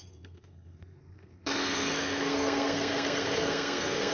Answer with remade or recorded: remade